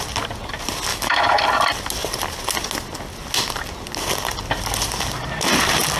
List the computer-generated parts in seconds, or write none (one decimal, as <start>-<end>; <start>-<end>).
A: 0.9-1.4